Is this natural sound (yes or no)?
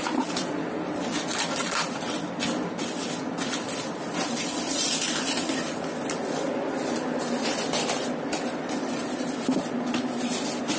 yes